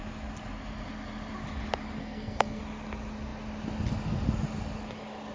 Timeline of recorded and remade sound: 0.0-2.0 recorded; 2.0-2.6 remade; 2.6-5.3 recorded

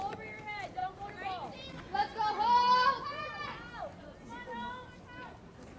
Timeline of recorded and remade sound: 0.0-5.8 recorded

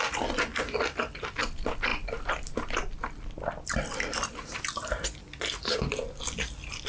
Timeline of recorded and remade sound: 0.0-6.9 recorded

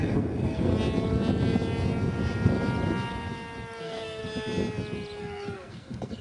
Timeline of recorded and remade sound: 0.0-0.7 remade; 0.7-3.8 recorded; 3.8-4.2 remade; 4.2-5.2 recorded; 5.2-6.2 remade